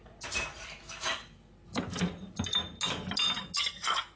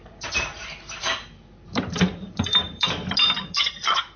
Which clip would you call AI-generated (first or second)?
second